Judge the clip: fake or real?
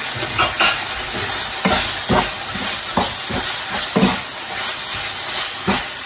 real